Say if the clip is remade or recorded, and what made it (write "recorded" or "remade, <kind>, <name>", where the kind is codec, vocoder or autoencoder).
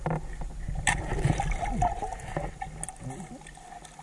recorded